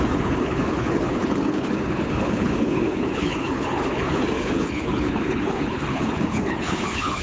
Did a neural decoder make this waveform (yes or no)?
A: yes